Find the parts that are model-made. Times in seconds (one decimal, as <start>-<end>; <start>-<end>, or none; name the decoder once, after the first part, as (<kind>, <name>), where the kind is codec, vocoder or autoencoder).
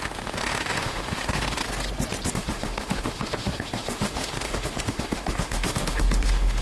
0.0-1.6 (autoencoder, DAC-VAE); 2.3-6.6